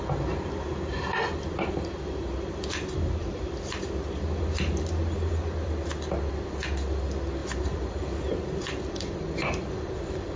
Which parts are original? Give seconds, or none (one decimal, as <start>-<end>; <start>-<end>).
0.0-3.2; 3.8-7.4; 10.0-10.4